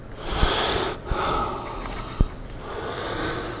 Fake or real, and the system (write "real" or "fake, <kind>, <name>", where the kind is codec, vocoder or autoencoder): real